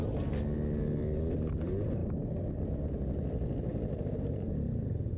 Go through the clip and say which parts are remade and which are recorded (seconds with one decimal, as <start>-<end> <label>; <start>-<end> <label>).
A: 0.0-3.7 recorded; 3.7-4.5 remade; 4.5-5.2 recorded